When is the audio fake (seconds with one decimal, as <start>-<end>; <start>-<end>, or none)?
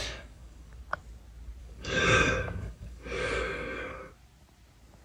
0.0-0.8; 1.6-4.1